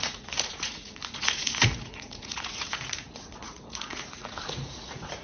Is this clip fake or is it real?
fake